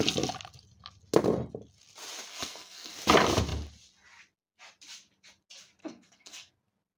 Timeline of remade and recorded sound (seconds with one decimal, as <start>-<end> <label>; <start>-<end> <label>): 0.0-2.3 recorded; 2.3-2.9 remade; 2.9-5.8 recorded; 5.8-6.5 remade; 6.5-7.0 recorded

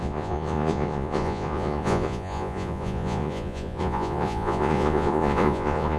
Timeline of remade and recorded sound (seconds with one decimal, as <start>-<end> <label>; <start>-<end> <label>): 0.0-6.0 remade

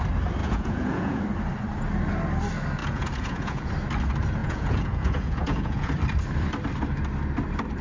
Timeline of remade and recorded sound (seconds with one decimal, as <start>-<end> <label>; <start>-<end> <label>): 0.0-0.4 recorded; 0.4-1.2 remade; 1.2-2.8 recorded; 2.8-3.7 remade; 3.7-4.4 recorded; 4.4-5.9 remade; 5.9-7.8 recorded

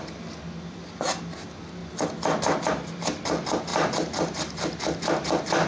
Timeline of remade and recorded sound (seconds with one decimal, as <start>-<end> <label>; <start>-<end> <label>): 0.0-5.7 recorded

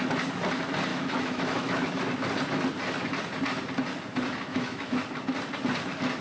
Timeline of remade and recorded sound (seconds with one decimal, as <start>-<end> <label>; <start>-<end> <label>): 0.0-0.9 recorded; 0.9-2.0 remade; 2.0-4.5 recorded; 4.5-5.0 remade; 5.0-6.2 recorded